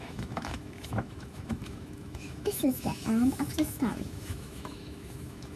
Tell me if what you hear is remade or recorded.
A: remade